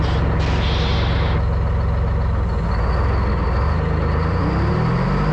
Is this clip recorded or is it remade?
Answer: recorded